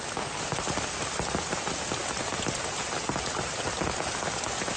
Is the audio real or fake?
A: real